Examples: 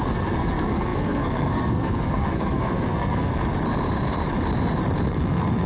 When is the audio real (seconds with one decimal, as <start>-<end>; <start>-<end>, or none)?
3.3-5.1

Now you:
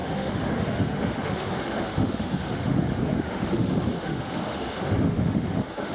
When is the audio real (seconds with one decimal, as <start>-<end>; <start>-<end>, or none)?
none

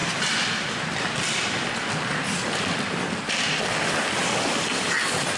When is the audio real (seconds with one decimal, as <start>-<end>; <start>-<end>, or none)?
0.0-5.4